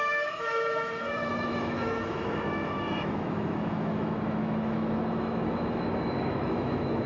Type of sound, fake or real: fake